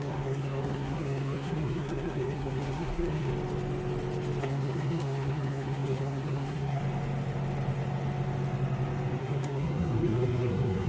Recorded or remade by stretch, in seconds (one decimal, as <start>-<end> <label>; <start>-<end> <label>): 0.0-3.3 remade; 3.3-4.4 recorded; 4.4-6.8 remade; 6.8-9.2 recorded; 9.2-10.9 remade